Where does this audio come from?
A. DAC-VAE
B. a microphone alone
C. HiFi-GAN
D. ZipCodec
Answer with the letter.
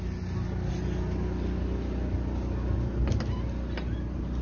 B